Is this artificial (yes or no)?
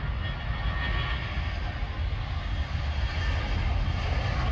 no